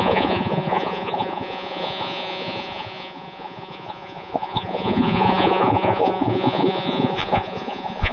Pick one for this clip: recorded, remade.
remade